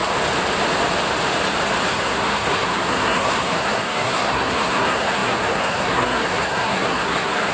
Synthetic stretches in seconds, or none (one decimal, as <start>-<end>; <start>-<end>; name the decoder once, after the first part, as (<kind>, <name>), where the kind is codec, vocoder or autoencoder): 1.9-7.5 (codec, SNAC)